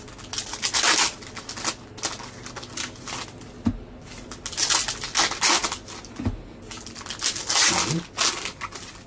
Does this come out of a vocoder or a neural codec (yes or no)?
no